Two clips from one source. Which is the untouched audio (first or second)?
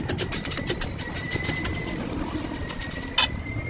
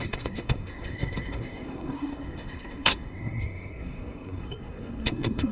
first